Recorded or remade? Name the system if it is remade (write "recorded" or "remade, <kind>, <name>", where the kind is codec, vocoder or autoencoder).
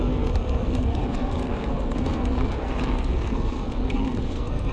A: remade, codec, SNAC